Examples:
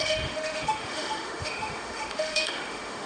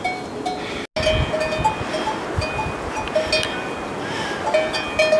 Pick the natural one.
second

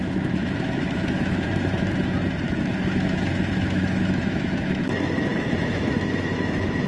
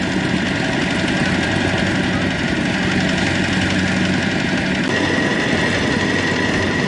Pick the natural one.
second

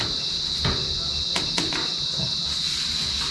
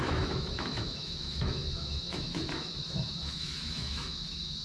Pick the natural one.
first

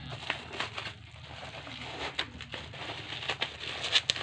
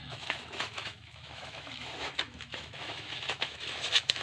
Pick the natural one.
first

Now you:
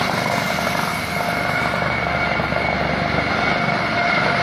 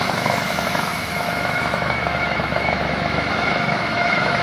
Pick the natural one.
first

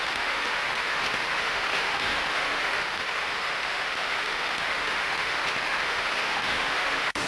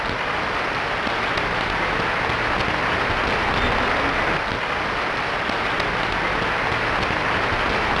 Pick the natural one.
second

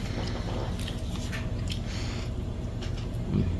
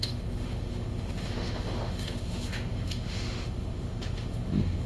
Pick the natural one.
first